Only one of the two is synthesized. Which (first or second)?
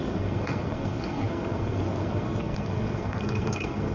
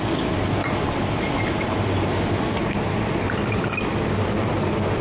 first